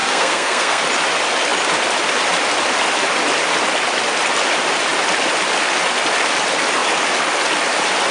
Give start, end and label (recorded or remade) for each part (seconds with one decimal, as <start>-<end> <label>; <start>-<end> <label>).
0.0-0.8 remade; 0.8-8.1 recorded